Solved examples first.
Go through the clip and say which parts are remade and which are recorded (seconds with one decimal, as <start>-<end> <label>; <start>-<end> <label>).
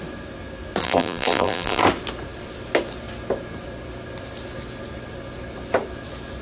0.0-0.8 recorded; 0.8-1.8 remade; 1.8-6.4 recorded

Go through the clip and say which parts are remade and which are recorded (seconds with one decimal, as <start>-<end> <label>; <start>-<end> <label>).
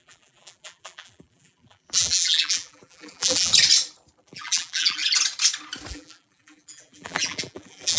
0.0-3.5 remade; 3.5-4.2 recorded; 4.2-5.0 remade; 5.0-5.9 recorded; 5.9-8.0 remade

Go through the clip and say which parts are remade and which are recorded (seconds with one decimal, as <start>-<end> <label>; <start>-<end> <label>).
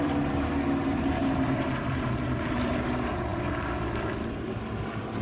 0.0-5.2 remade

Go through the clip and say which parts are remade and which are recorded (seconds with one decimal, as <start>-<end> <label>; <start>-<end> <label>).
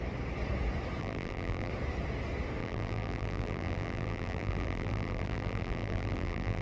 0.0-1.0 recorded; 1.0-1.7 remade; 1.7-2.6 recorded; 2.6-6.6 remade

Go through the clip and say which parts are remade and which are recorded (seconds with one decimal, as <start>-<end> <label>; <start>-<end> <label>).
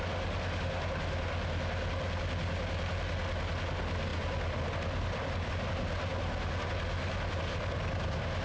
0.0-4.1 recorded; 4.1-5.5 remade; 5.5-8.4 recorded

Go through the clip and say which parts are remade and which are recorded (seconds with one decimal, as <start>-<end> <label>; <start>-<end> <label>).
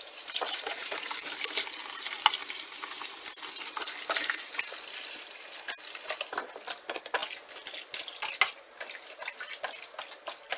0.0-2.4 recorded; 2.4-3.1 remade; 3.1-10.6 recorded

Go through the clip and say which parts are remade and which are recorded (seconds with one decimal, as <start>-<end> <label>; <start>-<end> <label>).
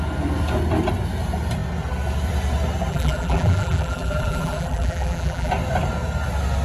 0.0-2.9 recorded; 2.9-5.5 remade; 5.5-6.6 recorded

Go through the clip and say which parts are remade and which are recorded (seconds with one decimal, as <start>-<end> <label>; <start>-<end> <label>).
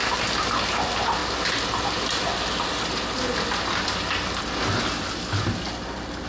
0.0-6.3 recorded